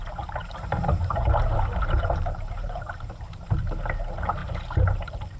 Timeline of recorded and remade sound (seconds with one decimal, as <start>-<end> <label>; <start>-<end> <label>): 0.0-0.4 recorded; 0.4-3.6 remade; 3.6-5.4 recorded